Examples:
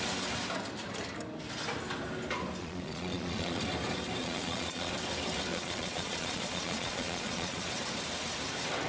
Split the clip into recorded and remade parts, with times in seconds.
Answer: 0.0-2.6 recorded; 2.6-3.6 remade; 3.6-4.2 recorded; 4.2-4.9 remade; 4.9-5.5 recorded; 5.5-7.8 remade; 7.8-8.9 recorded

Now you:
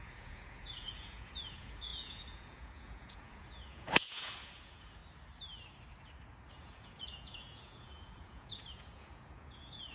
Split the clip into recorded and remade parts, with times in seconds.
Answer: 0.0-5.0 remade; 5.0-6.5 recorded; 6.5-9.9 remade